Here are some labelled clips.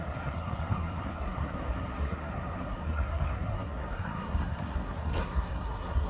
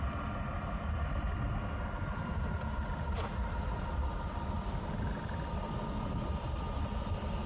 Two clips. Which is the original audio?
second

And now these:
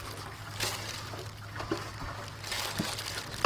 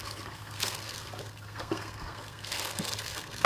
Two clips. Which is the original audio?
first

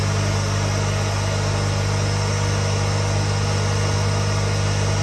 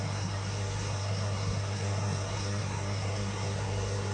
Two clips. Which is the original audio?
first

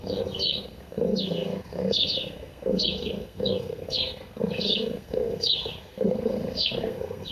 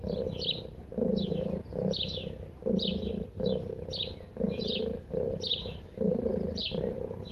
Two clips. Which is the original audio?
second